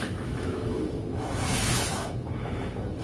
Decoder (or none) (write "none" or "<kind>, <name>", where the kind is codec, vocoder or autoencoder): autoencoder, DAC-VAE